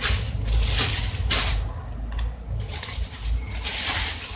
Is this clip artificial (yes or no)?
no